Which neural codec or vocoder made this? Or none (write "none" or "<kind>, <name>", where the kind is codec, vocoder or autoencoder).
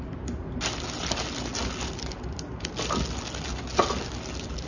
none